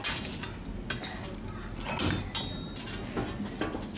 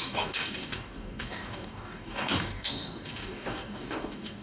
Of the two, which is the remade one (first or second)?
second